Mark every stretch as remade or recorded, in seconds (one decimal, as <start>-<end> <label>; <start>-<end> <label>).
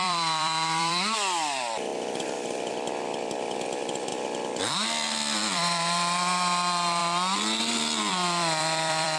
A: 0.0-4.1 remade; 4.1-4.6 recorded; 4.6-9.2 remade